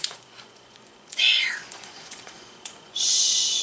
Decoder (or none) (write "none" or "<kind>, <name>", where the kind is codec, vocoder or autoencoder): vocoder, Vocos